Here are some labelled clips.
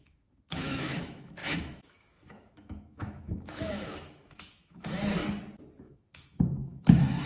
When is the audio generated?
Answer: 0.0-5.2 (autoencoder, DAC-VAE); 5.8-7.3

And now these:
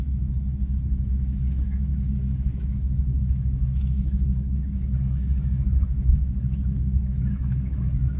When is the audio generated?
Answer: 0.0-0.5 (autoencoder, DAC-VAE); 1.1-8.2

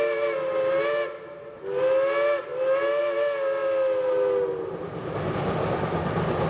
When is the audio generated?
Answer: none

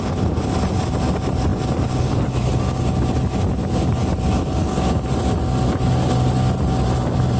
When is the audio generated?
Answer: none

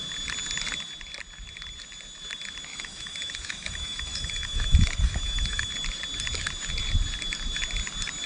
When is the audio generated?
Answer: 2.7-5.7 (autoencoder, DAC-VAE)

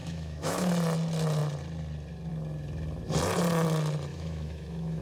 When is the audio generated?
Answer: 0.0-0.7 (autoencoder, DAC-VAE); 4.1-5.0

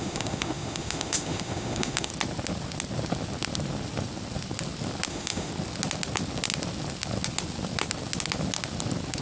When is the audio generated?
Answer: 0.0-2.1 (autoencoder, DAC-VAE); 5.1-5.5

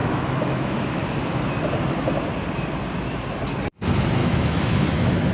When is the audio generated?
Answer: 0.0-1.0 (autoencoder, DAC-VAE); 4.2-5.3